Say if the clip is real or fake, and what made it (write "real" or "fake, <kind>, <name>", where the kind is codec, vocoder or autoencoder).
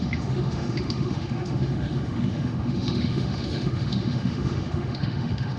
fake, autoencoder, DAC-VAE